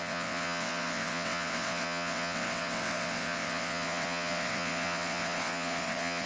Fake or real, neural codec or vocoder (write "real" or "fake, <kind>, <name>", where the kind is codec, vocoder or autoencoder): fake, vocoder, WaveNeXt